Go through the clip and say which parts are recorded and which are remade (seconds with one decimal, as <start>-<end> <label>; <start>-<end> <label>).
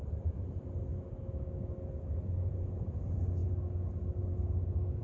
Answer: 0.0-0.9 recorded; 0.9-1.6 remade; 1.6-5.0 recorded